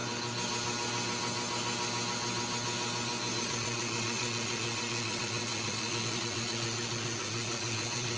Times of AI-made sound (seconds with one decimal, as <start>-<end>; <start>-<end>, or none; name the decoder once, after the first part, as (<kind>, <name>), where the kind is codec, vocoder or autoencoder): 3.4-8.2 (vocoder, Vocos)